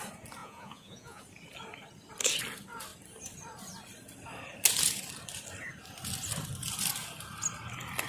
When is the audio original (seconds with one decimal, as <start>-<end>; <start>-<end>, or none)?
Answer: 0.0-0.4; 1.2-8.1